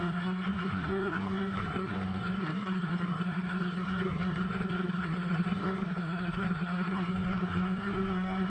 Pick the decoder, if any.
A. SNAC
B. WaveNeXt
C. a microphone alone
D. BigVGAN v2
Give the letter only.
A